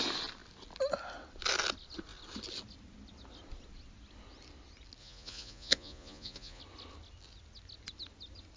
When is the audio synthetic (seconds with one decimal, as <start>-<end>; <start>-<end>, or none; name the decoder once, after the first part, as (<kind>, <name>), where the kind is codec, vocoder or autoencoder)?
5.0-6.6 (vocoder, Vocos)